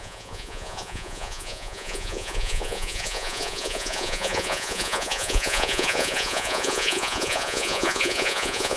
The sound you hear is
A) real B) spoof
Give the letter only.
B